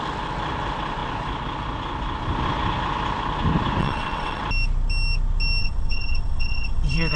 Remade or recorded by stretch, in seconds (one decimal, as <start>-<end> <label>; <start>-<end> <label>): 0.0-3.8 recorded; 3.8-4.4 remade; 4.4-5.6 recorded; 5.6-7.2 remade